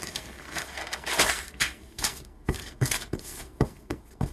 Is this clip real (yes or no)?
no